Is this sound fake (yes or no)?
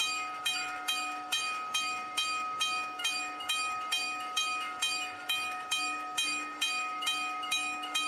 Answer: yes